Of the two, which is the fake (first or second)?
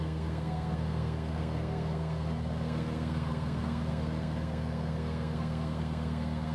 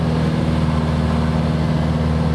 first